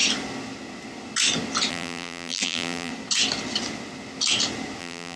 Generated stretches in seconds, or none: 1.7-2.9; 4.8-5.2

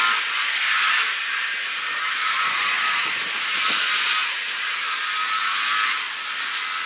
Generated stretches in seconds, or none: 0.4-3.6; 4.2-5.0

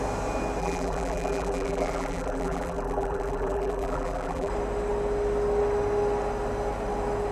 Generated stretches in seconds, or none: 0.6-4.5

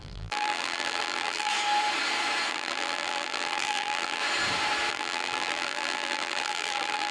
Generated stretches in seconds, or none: 0.0-1.5; 2.5-4.2; 4.9-7.1

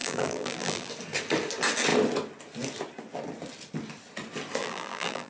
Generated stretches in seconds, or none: 0.0-0.9; 4.6-5.3

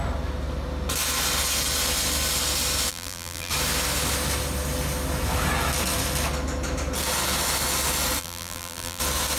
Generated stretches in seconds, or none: 2.9-3.5; 8.2-9.0

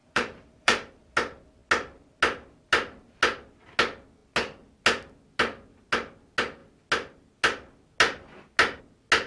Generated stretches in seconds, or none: 0.0-1.0